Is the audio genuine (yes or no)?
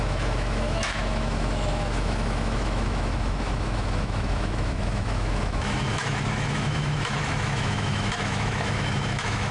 no